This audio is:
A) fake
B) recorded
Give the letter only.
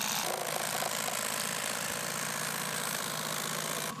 B